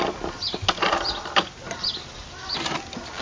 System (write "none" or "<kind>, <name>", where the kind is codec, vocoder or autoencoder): none